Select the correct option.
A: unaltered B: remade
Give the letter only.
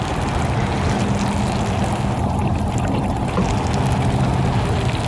A